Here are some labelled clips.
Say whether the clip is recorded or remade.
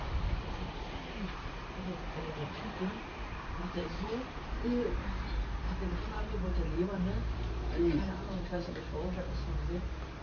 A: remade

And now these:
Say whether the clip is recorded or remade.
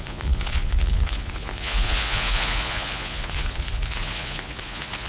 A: remade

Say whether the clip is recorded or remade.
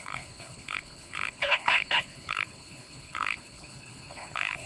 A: remade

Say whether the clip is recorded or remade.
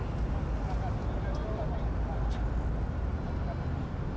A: recorded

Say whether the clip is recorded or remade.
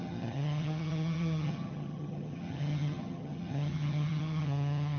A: remade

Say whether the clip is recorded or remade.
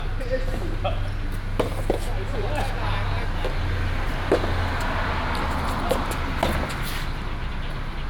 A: recorded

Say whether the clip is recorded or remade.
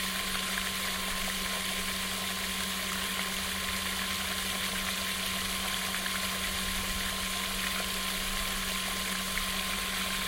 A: recorded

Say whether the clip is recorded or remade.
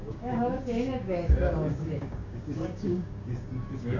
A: remade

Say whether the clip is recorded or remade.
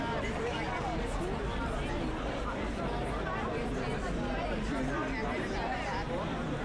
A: recorded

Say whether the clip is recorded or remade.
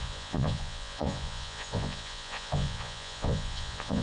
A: remade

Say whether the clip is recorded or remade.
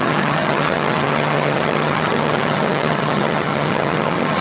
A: remade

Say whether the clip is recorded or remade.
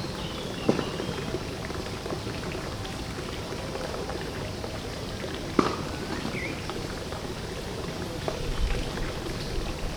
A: remade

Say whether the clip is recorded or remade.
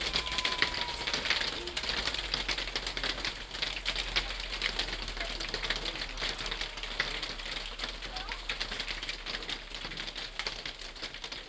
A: recorded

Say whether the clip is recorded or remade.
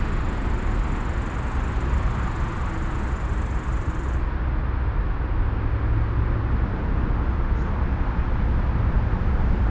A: recorded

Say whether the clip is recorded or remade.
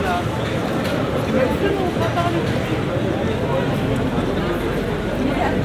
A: recorded